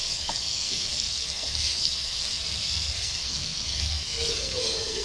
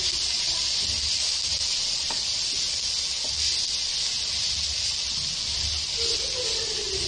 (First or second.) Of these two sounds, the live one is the second